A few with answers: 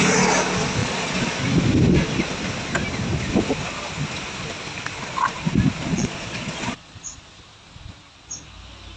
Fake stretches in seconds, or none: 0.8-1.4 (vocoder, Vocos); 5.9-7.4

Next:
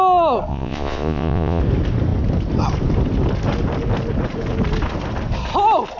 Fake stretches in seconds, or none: 0.5-1.6 (vocoder, Vocos)

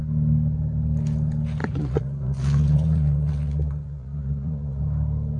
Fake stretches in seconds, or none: 1.6-4.8 (vocoder, Vocos)

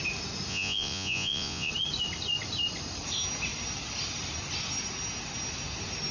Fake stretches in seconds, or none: 0.5-1.7 (vocoder, Vocos)

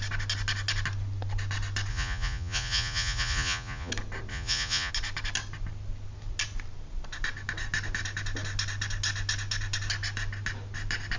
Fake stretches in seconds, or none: 1.9-3.9 (vocoder, Vocos); 4.3-4.9

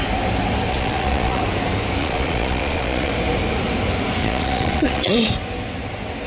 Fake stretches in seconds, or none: 0.7-1.4 (vocoder, Vocos); 2.0-3.1; 4.2-5.3